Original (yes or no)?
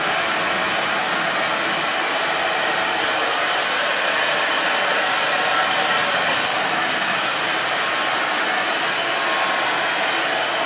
yes